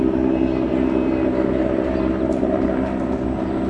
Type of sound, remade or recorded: recorded